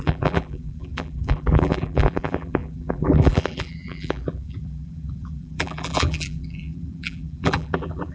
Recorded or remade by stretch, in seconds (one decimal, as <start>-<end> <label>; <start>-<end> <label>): 0.0-8.1 remade